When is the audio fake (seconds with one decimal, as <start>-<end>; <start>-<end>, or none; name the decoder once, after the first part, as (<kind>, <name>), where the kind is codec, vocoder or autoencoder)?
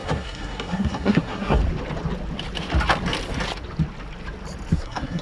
0.0-1.6 (codec, SNAC); 4.7-5.2